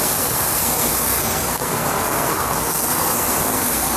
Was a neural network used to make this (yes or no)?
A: yes